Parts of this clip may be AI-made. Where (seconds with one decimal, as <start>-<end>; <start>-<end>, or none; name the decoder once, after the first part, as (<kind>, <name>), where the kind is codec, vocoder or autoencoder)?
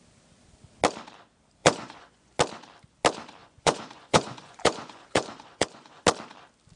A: 1.6-2.4 (vocoder, Vocos); 3.4-6.0